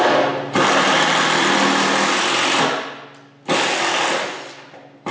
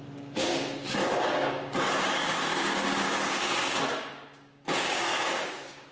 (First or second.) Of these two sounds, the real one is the first